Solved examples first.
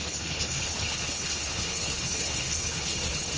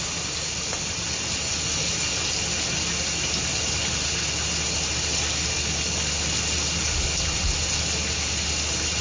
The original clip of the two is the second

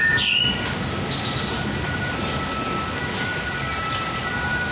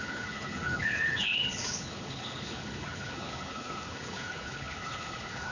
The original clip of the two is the first